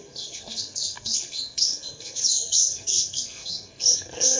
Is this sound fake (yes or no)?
yes